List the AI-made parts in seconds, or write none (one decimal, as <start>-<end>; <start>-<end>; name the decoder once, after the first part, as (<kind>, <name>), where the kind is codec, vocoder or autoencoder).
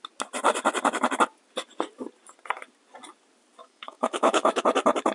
3.6-4.6 (autoencoder, DAC-VAE)